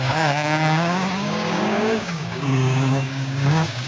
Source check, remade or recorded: remade